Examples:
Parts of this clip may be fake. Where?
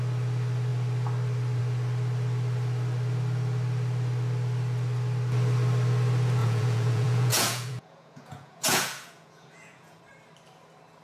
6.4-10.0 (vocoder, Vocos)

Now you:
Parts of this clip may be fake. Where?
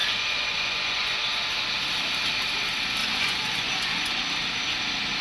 0.0-1.2 (vocoder, Vocos); 3.0-4.2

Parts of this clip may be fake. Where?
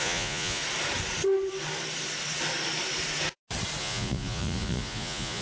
0.0-0.6 (vocoder, Vocos); 3.8-5.4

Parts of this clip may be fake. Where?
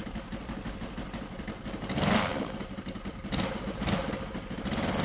none